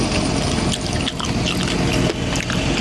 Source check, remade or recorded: recorded